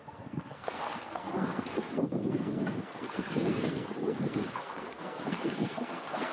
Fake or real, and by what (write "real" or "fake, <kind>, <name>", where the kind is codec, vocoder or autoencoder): fake, codec, SNAC